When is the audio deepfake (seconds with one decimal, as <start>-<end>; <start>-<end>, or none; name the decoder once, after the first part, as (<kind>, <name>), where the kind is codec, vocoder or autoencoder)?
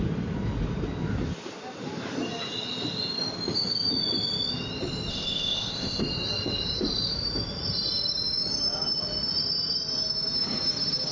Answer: 5.1-6.0 (codec, ZipCodec)